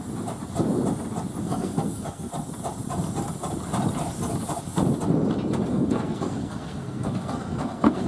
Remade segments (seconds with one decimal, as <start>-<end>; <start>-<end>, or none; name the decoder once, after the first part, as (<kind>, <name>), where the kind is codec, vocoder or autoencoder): 1.4-2.3 (codec, SNAC); 5.7-8.1